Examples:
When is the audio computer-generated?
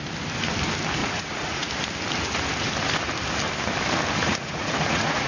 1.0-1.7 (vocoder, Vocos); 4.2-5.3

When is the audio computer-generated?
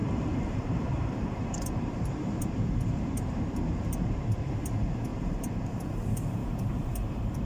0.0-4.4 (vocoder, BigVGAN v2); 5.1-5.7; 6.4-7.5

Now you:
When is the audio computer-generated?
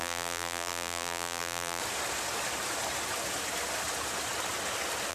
0.0-1.8 (vocoder, BigVGAN v2)